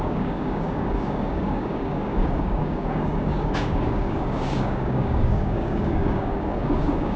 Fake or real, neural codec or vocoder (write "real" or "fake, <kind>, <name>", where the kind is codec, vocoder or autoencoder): fake, codec, DAC